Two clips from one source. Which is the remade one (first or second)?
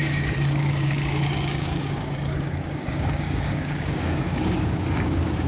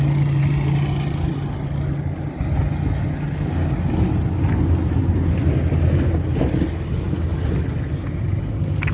first